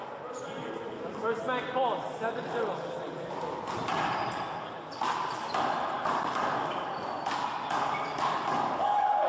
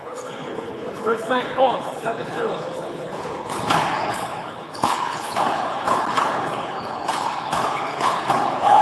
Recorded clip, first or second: first